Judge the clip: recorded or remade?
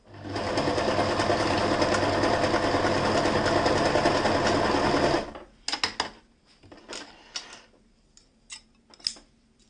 recorded